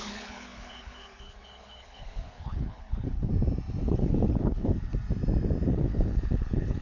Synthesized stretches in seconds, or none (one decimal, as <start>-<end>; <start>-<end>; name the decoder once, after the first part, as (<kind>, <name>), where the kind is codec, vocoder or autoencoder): 0.0-3.3 (codec, HILCodec); 3.9-4.9; 5.7-6.8

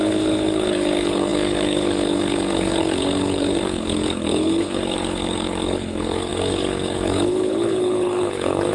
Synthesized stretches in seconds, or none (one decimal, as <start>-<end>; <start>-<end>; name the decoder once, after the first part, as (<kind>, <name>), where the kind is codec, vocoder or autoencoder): 0.0-8.7 (codec, HILCodec)

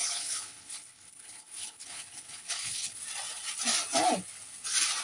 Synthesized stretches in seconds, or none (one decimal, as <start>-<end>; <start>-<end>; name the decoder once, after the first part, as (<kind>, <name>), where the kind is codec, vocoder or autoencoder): 0.0-3.0 (codec, HILCodec)

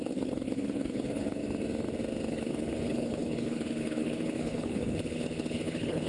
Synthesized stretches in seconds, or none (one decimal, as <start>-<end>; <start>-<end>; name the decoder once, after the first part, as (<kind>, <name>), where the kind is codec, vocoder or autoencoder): 0.0-1.4 (codec, HILCodec); 2.3-6.1

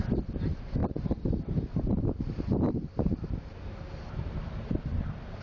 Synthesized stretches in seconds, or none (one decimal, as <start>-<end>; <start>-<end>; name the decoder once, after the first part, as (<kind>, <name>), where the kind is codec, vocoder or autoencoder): none

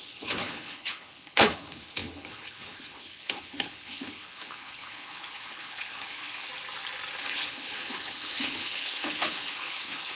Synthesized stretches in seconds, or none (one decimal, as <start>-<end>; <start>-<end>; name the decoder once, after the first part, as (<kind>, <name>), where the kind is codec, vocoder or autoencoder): 0.0-6.5 (codec, HILCodec); 7.2-10.1

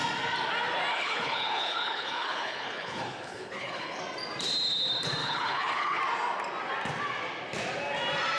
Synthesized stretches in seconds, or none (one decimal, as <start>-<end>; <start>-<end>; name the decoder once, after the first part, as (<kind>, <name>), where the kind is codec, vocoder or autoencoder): 0.9-4.0 (codec, HILCodec); 5.2-6.0

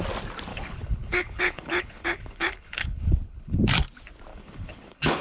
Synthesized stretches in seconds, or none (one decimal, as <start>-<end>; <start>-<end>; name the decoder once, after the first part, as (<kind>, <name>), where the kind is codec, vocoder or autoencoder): 0.5-3.6 (codec, HILCodec); 4.3-5.2